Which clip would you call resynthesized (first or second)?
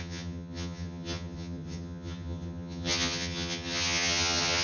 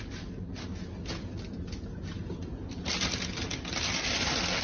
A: first